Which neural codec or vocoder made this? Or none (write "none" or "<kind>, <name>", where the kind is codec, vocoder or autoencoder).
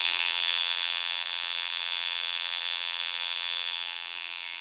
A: vocoder, BigVGAN v2